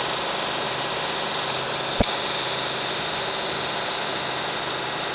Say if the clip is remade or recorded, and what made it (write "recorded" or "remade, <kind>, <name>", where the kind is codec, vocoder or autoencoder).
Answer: recorded